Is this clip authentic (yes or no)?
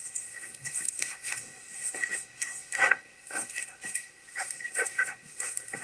no